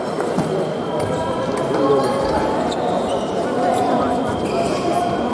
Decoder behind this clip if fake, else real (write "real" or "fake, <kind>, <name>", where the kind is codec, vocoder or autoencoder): real